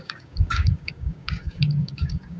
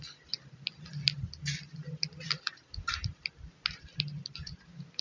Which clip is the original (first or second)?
second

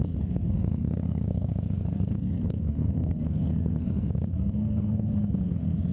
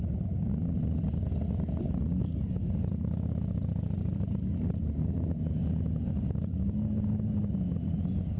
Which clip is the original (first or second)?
second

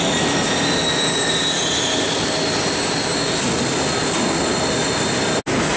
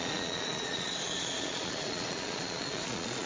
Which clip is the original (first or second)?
first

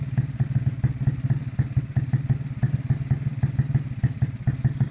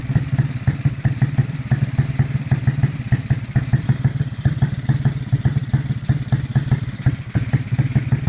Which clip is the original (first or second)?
first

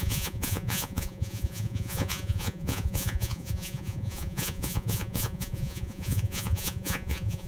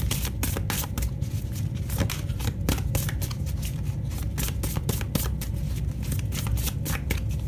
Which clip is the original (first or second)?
second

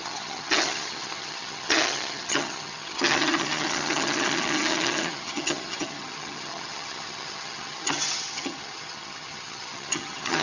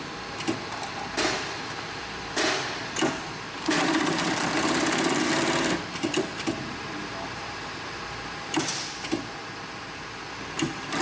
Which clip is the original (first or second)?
second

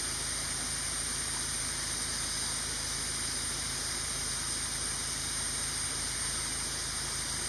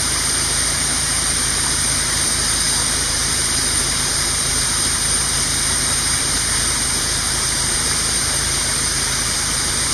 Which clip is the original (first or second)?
first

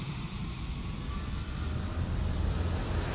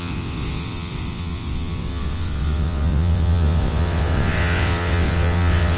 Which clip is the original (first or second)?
first